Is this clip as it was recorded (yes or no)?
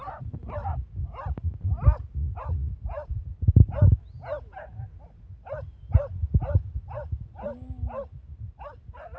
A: yes